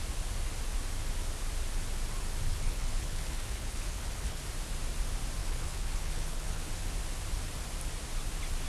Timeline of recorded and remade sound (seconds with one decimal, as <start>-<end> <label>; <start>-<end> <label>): 0.0-2.5 recorded; 2.5-4.4 remade; 4.4-5.4 recorded; 5.4-6.7 remade; 6.7-8.7 recorded